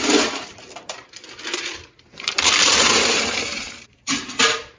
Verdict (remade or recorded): remade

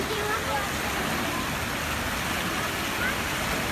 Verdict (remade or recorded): remade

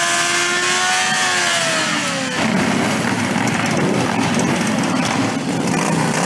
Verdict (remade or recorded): recorded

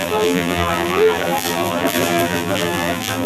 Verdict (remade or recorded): remade